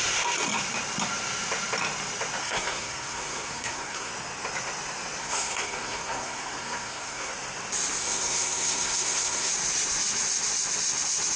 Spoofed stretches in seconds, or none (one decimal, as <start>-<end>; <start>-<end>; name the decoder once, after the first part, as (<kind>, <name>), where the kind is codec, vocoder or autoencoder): 2.4-4.1 (codec, SNAC); 5.2-7.3; 8.0-9.5